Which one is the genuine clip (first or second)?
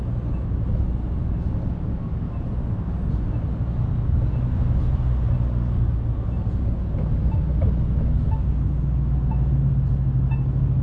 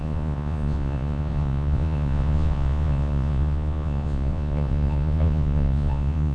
first